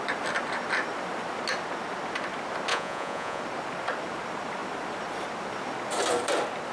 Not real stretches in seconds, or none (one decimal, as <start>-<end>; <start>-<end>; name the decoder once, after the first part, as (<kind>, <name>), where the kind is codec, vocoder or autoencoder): 2.7-3.4 (vocoder, Vocos)